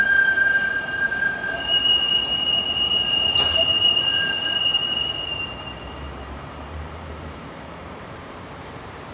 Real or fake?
fake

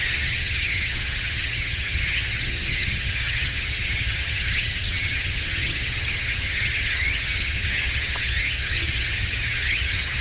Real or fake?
fake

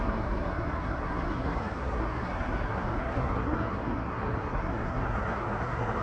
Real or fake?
fake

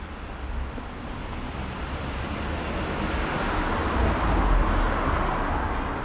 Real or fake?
real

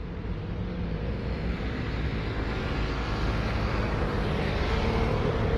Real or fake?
real